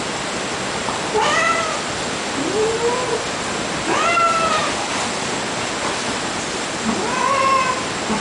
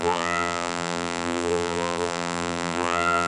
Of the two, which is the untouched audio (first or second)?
first